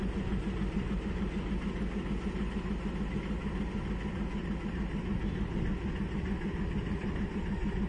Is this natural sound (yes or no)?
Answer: yes